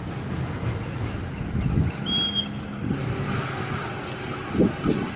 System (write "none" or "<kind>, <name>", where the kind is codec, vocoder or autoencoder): none